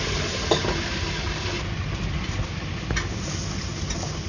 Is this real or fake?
real